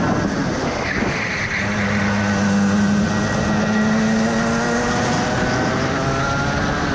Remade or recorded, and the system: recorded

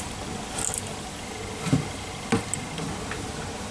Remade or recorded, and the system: recorded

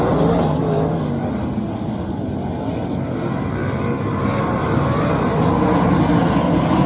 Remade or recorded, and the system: recorded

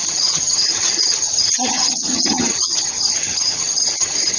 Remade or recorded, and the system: remade, vocoder, HiFi-GAN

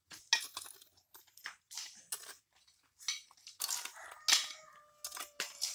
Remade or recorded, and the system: recorded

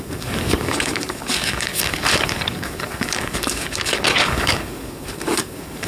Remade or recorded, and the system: remade, codec, DAC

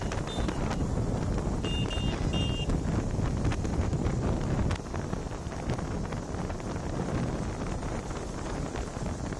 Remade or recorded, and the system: recorded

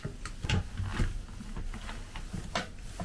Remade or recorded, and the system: recorded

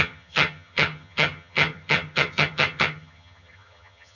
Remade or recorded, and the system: remade, vocoder, HiFi-GAN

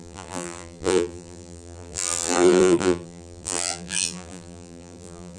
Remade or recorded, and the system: remade, vocoder, BigVGAN v2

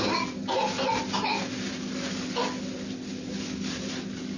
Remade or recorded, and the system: recorded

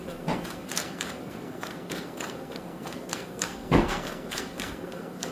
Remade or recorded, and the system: remade, codec, SNAC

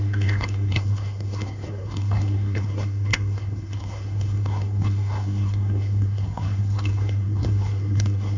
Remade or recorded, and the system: remade, codec, SNAC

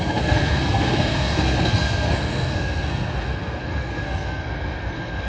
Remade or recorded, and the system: remade, codec, SNAC